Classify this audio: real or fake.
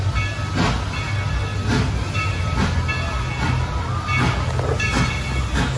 real